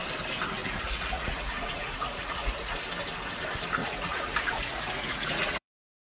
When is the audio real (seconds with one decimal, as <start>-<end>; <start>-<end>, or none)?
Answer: 0.0-0.6; 2.8-3.8